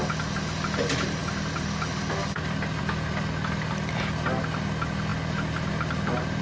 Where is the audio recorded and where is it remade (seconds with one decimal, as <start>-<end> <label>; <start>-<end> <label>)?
0.0-6.4 recorded